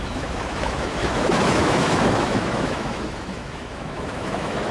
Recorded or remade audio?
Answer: remade